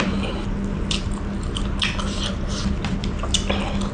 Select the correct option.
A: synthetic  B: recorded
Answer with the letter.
B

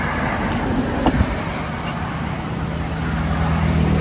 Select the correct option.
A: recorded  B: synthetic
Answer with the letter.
A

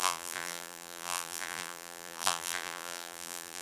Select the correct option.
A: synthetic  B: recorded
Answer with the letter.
A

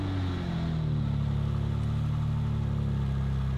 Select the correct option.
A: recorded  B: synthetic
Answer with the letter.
A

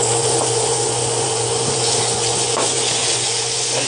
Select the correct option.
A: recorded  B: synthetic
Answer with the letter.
B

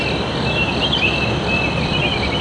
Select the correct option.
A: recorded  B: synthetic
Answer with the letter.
A